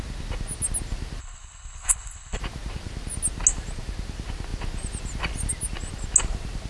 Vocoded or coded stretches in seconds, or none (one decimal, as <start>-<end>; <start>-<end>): 1.2-2.4